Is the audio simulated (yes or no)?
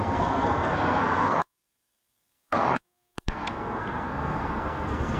yes